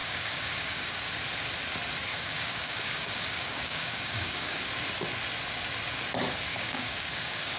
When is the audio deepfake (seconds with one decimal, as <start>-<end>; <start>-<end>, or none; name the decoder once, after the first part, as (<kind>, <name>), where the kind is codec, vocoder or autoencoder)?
0.0-1.1 (codec, DAC); 2.1-4.6; 6.5-7.6